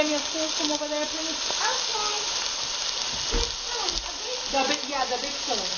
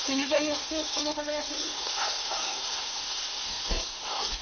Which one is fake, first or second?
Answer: second